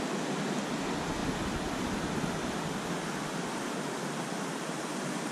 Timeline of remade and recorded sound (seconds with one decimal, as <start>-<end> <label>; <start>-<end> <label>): 0.0-5.3 recorded